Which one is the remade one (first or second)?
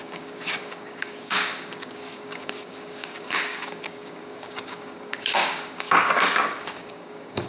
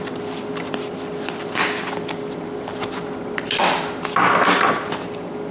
first